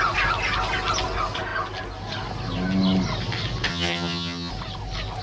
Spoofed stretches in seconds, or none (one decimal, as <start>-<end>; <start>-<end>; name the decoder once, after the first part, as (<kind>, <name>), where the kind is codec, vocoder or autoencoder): 3.7-4.5 (vocoder, HiFi-GAN)